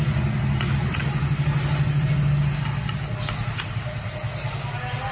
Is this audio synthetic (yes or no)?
no